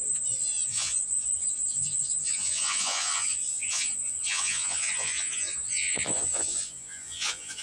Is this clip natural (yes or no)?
no